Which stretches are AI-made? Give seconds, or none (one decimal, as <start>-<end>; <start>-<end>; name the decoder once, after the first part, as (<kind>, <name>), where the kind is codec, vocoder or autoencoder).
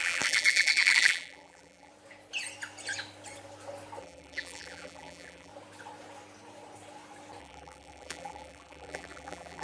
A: 0.0-1.9 (vocoder, BigVGAN v2); 4.0-5.5; 7.4-9.6